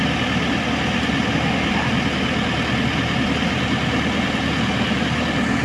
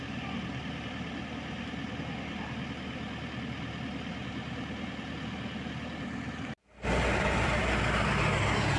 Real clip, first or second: first